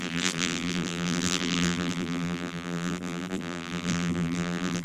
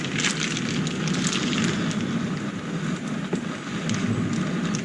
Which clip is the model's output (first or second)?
first